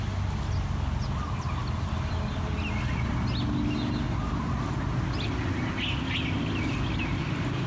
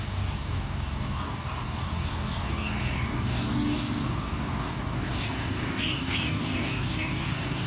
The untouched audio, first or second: first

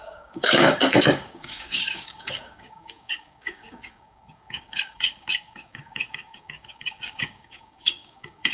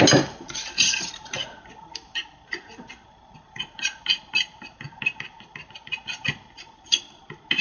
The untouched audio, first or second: second